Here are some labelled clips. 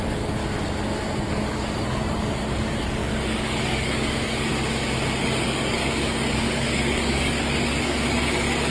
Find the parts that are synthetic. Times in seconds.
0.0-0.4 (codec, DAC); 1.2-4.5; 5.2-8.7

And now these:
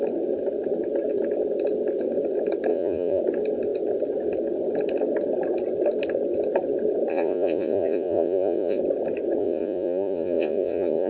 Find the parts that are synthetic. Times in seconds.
2.7-3.2 (vocoder, Vocos); 7.1-8.8; 9.4-11.1